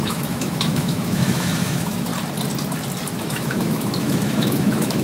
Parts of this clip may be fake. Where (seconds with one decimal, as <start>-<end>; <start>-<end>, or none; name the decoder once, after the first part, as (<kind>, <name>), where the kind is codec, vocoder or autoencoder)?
0.0-2.1 (autoencoder, DAC-VAE); 3.2-5.0